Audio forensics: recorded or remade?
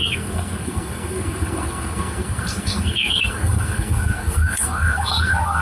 remade